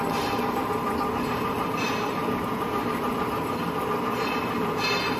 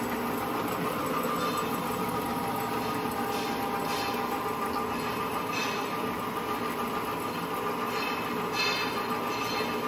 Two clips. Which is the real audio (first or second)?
second